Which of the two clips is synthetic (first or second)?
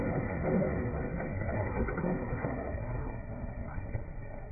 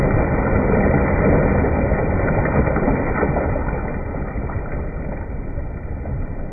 first